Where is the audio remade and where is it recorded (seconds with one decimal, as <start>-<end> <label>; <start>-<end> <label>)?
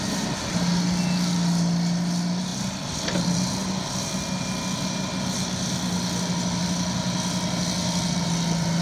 0.0-8.8 recorded